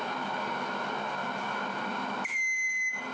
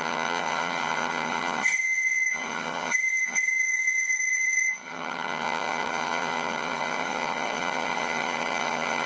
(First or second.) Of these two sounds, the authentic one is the first